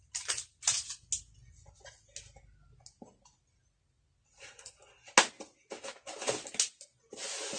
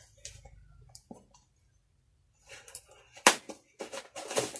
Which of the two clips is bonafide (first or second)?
first